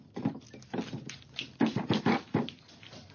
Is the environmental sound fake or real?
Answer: real